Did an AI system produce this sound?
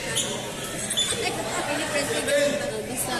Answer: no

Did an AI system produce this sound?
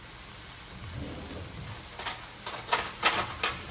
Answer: no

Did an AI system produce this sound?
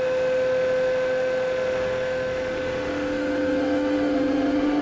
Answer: yes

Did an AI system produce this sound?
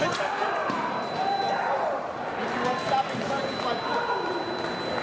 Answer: no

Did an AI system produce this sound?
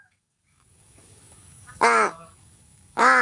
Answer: yes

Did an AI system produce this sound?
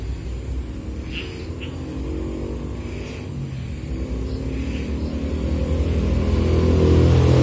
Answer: no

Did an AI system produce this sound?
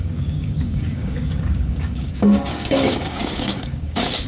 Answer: yes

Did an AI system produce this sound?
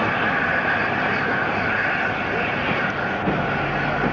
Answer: no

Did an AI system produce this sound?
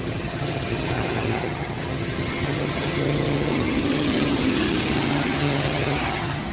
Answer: yes